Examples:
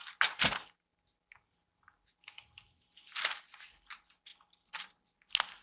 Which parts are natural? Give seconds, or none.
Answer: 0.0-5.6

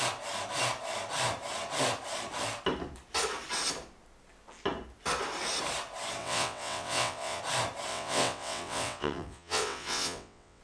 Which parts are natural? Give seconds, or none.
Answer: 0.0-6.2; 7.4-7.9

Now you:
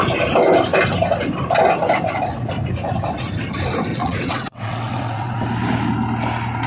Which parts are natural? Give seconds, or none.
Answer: 0.0-3.9; 5.4-6.7